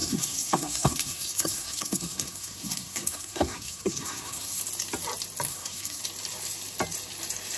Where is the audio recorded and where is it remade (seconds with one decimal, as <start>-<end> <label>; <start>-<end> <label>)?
0.0-4.6 remade; 4.6-5.5 recorded; 5.5-6.0 remade; 6.0-7.6 recorded